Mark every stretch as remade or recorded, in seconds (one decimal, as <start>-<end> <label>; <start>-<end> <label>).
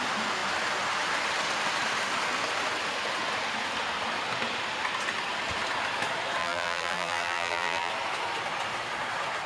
0.0-6.4 recorded; 6.4-7.9 remade; 7.9-9.5 recorded